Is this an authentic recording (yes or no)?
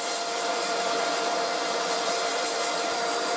no